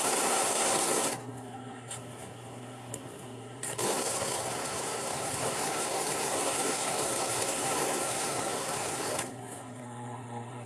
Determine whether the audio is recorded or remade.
remade